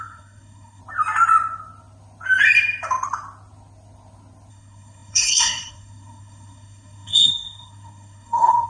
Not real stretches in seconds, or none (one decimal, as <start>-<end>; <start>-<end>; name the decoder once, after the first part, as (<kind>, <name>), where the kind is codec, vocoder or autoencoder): 0.0-0.8 (codec, SNAC); 4.5-8.7